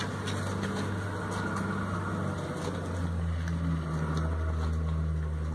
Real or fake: real